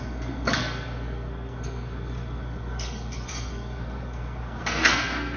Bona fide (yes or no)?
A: no